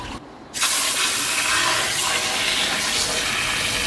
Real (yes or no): yes